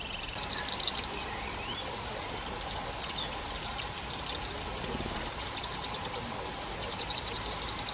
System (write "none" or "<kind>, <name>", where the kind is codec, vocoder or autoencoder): none